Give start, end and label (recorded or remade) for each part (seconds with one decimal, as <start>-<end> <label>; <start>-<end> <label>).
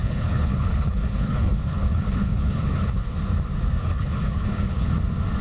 0.0-3.2 remade; 3.2-3.8 recorded; 3.8-4.9 remade; 4.9-5.4 recorded